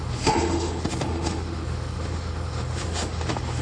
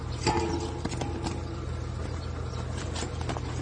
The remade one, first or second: first